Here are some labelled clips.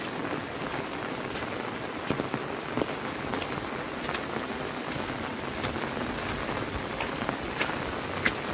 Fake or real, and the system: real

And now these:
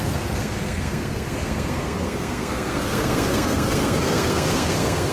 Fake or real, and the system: fake, codec, SNAC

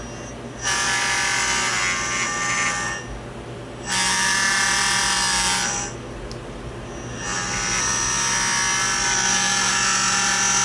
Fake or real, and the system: real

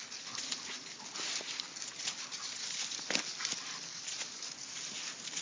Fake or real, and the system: real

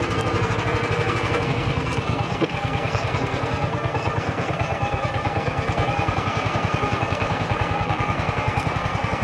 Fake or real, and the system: fake, codec, SNAC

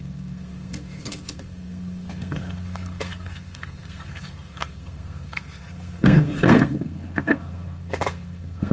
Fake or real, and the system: fake, codec, SNAC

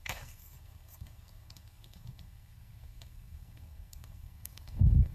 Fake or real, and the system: fake, codec, SNAC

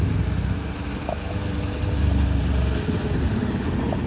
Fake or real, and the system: real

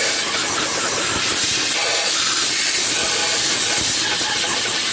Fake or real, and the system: real